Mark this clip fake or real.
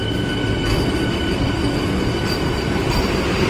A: fake